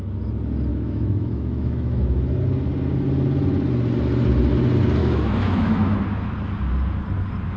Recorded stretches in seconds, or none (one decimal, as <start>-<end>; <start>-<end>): 0.0-0.7; 2.2-5.0; 6.0-7.6